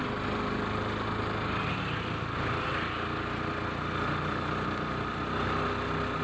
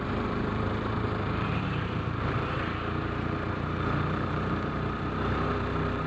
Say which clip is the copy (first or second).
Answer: second